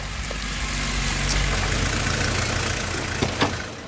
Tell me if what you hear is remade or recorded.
recorded